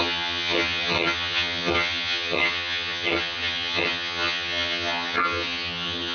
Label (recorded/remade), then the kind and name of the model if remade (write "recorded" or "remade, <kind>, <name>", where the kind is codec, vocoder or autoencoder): remade, vocoder, HiFi-GAN